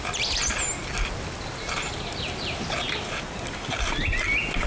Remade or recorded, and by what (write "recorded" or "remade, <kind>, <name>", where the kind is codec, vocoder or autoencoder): recorded